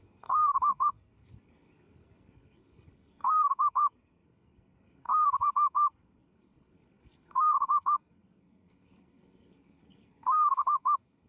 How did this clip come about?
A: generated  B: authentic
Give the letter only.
A